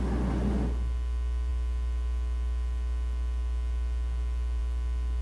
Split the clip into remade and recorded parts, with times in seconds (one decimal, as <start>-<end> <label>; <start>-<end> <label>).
0.0-5.2 recorded